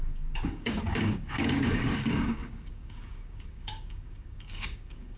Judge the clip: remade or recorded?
remade